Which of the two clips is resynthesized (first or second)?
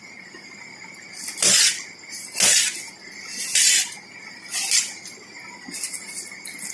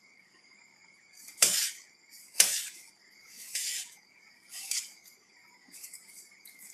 second